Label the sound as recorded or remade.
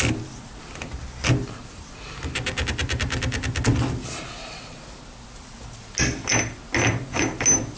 recorded